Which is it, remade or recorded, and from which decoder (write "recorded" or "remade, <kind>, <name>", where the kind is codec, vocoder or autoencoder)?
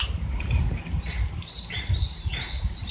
remade, vocoder, BigVGAN v2